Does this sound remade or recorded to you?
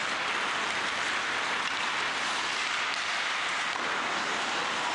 recorded